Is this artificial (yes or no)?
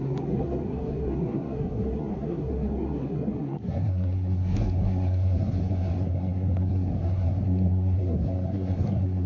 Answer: yes